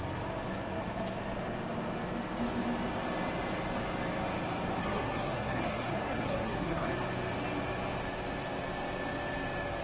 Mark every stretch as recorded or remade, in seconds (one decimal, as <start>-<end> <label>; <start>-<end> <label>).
0.0-4.8 recorded; 4.8-6.9 remade; 6.9-9.8 recorded